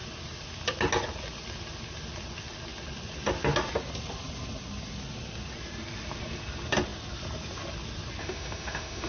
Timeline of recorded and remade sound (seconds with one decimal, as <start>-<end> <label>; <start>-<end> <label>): 0.0-8.2 recorded; 8.2-9.1 remade